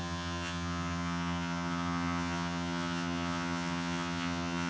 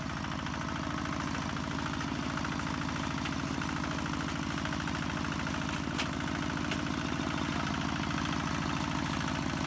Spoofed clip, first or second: first